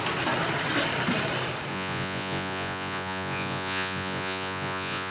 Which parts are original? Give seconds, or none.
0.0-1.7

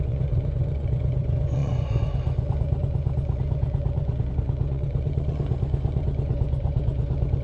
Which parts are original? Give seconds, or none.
none

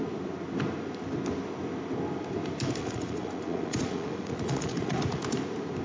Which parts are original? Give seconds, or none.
0.0-2.8; 5.2-5.8

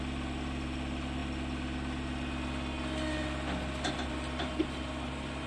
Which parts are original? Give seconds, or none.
0.0-5.5

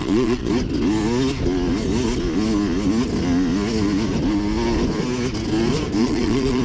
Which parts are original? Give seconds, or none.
0.5-6.0